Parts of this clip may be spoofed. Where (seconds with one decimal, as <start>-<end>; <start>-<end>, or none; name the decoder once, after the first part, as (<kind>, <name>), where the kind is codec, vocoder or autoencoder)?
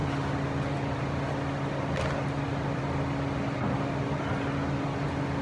none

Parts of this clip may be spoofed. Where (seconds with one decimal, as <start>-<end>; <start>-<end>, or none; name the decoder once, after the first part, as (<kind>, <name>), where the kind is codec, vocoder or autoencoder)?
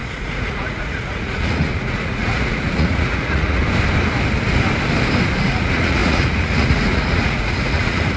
0.0-3.6 (vocoder, Vocos); 5.4-8.2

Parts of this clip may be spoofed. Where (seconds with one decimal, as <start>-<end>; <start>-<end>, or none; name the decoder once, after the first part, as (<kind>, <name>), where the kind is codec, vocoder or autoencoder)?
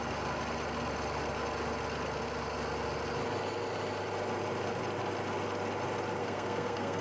6.2-7.0 (codec, SNAC)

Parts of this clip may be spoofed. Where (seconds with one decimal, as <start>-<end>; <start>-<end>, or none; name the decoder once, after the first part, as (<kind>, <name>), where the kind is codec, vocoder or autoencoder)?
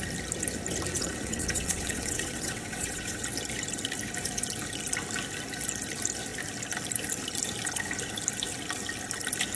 0.9-3.2 (vocoder, WaveNeXt)